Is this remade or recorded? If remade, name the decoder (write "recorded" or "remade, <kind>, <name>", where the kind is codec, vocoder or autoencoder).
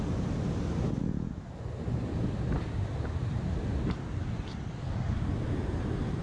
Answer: recorded